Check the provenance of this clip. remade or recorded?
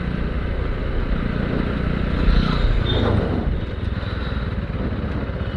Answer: recorded